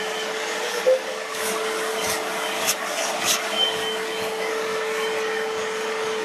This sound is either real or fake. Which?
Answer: fake